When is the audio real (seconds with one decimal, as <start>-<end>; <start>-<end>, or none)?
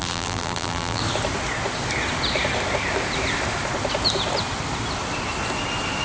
1.0-6.0